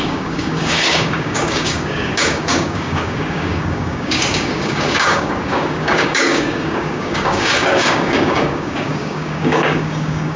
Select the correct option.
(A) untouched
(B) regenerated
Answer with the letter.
B